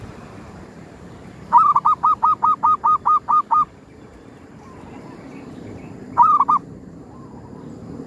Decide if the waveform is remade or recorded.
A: remade